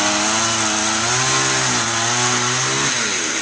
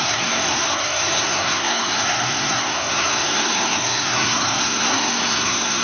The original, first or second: first